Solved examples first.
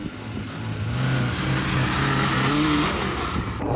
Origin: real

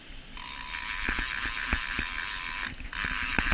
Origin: real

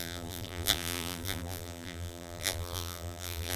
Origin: fake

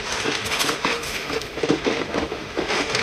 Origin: fake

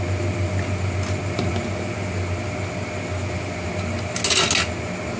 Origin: real